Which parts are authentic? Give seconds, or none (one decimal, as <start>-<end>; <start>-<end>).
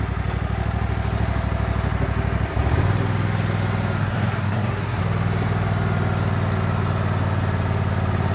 0.0-4.0; 5.0-8.3